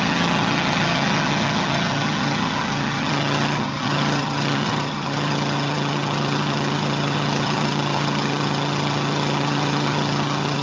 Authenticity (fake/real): fake